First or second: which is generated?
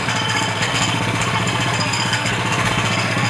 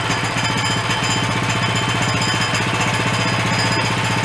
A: first